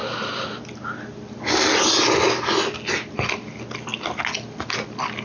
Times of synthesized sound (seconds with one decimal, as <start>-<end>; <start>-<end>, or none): none